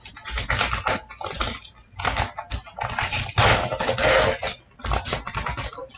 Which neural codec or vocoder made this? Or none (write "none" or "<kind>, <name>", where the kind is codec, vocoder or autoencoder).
none